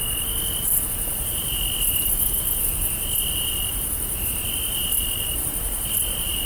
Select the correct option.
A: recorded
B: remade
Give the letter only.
A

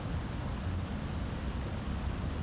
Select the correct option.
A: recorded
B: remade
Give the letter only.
A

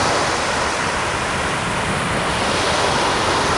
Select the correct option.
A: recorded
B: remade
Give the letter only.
A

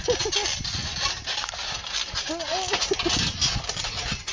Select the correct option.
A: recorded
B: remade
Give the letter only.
A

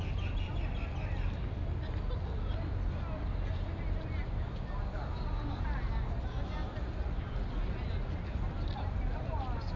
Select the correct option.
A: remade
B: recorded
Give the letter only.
B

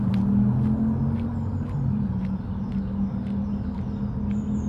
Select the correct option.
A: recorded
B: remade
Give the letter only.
A